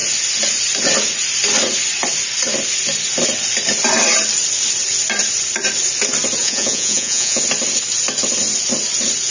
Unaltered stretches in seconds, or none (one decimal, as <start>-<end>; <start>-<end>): 0.0-6.4; 7.4-9.3